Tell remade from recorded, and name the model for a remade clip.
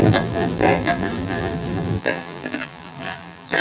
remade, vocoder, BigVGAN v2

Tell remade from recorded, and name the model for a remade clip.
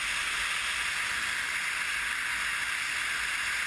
recorded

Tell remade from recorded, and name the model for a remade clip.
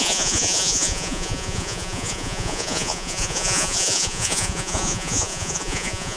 remade, vocoder, Vocos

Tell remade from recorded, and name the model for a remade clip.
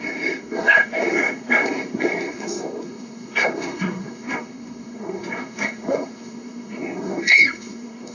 remade, codec, SNAC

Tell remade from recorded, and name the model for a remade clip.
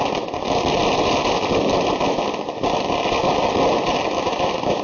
recorded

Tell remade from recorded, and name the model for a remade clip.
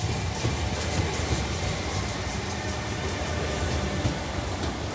recorded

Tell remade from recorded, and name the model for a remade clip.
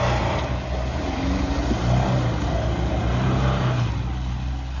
recorded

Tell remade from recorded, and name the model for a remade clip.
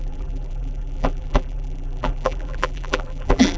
remade, vocoder, BigVGAN v2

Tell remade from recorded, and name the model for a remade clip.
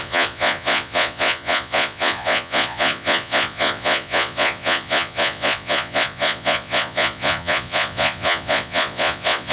remade, vocoder, Vocos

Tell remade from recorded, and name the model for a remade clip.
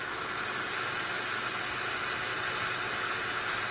recorded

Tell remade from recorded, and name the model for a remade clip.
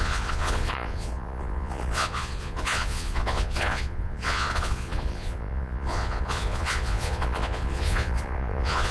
remade, vocoder, Vocos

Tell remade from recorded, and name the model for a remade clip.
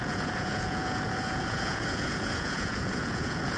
remade, vocoder, Vocos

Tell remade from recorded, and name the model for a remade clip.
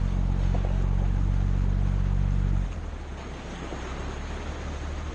recorded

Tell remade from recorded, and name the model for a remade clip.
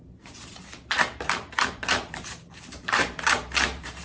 remade, vocoder, BigVGAN v2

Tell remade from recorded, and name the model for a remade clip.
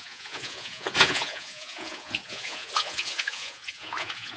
remade, vocoder, Vocos